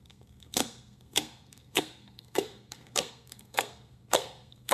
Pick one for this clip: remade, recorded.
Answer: remade